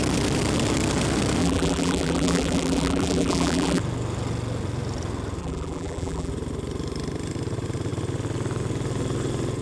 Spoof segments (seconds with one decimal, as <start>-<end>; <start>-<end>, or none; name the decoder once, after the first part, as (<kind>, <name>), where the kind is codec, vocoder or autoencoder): 1.4-3.8 (vocoder, BigVGAN v2); 5.4-6.3